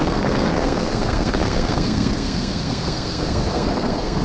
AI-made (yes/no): yes